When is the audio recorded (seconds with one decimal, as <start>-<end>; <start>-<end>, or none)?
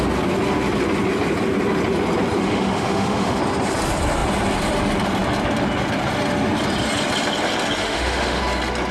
0.0-2.4; 3.4-7.8; 8.4-8.9